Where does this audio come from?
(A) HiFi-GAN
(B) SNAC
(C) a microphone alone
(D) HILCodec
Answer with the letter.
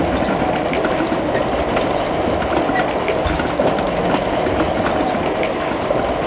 C